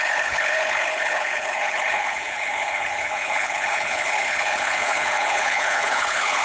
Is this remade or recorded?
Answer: remade